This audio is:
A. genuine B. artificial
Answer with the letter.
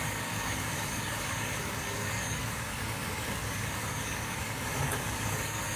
B